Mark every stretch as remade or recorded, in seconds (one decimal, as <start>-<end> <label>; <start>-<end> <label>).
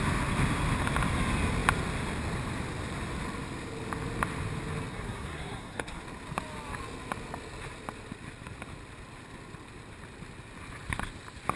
0.0-4.9 recorded; 4.9-6.0 remade; 6.0-11.6 recorded